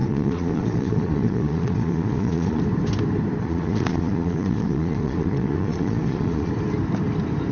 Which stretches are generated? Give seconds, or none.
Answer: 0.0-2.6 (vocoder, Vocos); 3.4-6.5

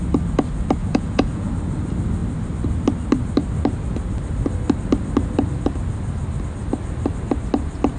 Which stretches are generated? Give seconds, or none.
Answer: 0.8-1.5 (vocoder, Vocos)